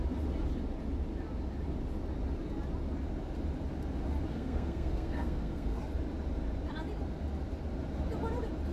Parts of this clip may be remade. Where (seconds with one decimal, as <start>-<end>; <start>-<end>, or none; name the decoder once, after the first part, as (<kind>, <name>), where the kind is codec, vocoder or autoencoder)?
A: 4.3-5.8 (codec, SNAC)